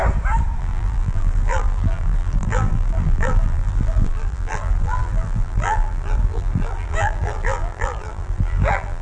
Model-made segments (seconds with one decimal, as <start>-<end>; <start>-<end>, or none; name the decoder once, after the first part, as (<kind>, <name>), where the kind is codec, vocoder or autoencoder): 0.6-9.0 (vocoder, BigVGAN v2)